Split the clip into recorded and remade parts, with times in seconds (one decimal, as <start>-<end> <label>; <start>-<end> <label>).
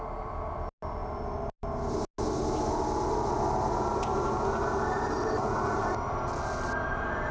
0.0-7.3 recorded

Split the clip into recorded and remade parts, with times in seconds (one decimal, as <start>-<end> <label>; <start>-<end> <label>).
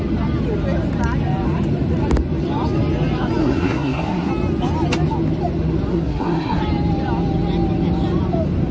0.0-3.4 recorded; 3.4-4.3 remade; 4.3-5.9 recorded; 5.9-6.6 remade; 6.6-8.7 recorded